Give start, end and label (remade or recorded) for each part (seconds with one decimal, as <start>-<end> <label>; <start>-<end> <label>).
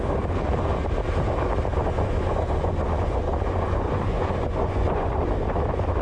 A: 0.0-1.7 recorded; 1.7-5.3 remade; 5.3-6.0 recorded